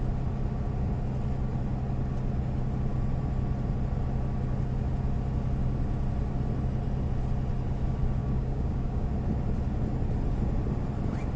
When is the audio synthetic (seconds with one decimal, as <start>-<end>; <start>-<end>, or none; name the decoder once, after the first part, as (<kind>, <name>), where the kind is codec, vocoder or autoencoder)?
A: 8.2-9.1 (codec, DAC)